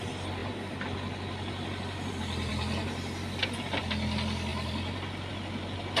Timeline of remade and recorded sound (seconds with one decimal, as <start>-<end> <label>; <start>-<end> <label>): 0.0-6.0 recorded

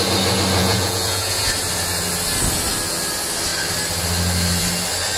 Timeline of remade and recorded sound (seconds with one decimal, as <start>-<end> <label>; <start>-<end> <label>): 0.0-0.6 recorded; 0.6-1.5 remade; 1.5-5.2 recorded